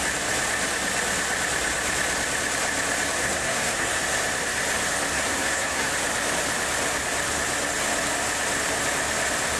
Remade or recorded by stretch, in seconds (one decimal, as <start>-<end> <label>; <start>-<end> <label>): 0.0-3.2 recorded; 3.2-4.0 remade; 4.0-5.1 recorded; 5.1-5.9 remade; 5.9-9.6 recorded